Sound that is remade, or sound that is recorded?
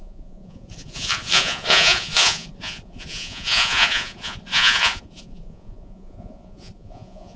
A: remade